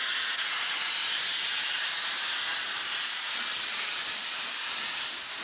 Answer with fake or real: real